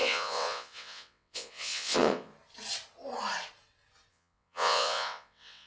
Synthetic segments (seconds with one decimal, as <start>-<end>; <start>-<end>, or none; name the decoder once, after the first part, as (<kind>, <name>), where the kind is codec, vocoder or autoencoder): 0.0-2.3 (vocoder, WaveNeXt); 4.1-5.7